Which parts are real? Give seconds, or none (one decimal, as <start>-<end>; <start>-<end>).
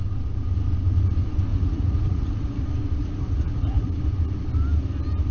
0.0-1.5; 2.6-3.0; 3.9-5.3